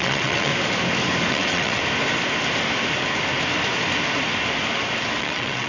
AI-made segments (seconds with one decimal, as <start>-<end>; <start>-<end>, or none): 0.0-0.5; 1.3-1.8; 5.2-5.7